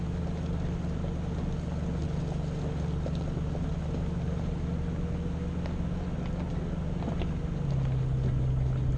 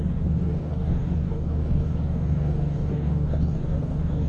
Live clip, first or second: first